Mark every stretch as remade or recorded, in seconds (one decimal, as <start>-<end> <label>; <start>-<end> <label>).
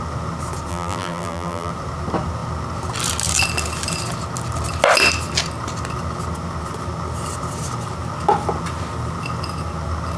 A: 0.0-0.7 recorded; 0.7-1.7 remade; 1.7-10.2 recorded